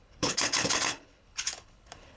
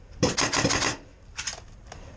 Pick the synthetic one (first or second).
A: first